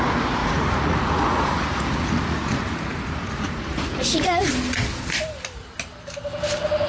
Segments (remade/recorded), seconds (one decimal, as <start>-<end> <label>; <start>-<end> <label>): 0.0-0.4 recorded; 0.4-4.5 remade; 4.5-6.9 recorded